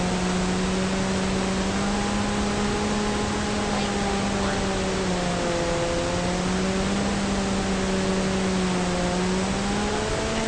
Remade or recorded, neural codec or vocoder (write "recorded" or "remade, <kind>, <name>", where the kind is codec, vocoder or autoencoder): recorded